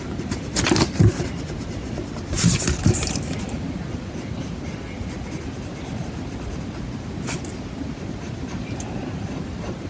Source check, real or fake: real